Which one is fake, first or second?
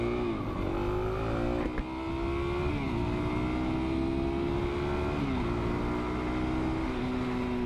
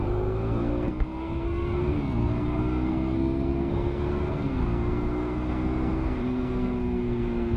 second